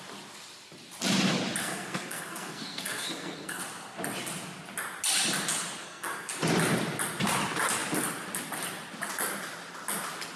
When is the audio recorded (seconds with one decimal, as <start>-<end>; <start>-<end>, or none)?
0.0-1.6; 3.6-5.8; 6.3-10.4

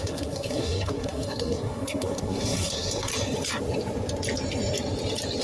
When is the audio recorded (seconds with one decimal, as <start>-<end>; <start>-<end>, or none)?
3.1-5.4